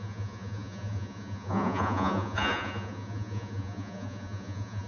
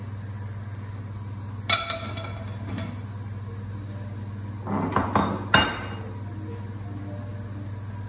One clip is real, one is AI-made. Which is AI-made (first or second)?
first